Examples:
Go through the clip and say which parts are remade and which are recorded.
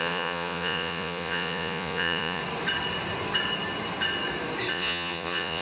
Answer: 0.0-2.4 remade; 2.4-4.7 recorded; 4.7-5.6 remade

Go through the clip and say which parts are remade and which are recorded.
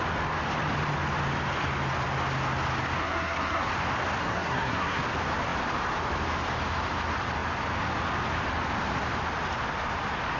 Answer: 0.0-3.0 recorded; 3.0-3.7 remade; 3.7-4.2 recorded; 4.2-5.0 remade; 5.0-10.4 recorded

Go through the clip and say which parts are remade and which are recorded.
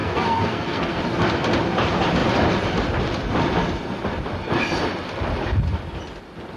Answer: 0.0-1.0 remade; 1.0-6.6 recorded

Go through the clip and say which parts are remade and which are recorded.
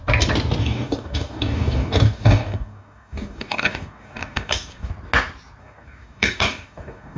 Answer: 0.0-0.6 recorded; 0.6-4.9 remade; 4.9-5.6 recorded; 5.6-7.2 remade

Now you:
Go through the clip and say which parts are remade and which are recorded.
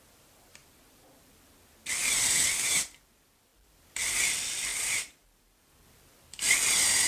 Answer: 0.0-2.0 remade; 2.0-2.7 recorded; 2.7-7.1 remade